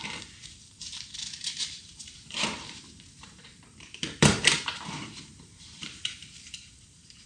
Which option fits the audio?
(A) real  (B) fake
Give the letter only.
B